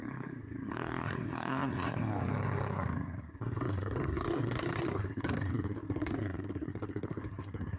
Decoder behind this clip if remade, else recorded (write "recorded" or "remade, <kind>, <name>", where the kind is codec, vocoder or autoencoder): remade, codec, SNAC